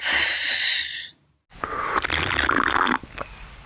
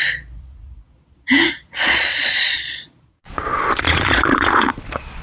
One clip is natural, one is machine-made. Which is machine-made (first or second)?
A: second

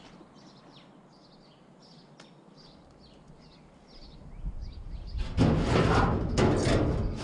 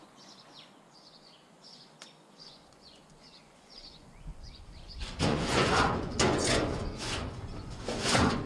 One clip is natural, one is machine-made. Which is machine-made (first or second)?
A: second